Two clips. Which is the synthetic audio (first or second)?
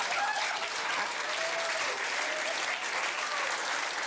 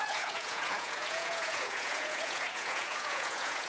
second